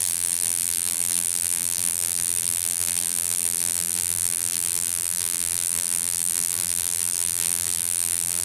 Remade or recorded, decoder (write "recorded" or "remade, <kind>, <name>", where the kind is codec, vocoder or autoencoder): remade, vocoder, BigVGAN v2